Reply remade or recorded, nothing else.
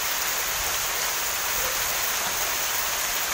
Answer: remade